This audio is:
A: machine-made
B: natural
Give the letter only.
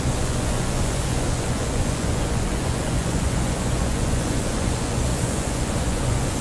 A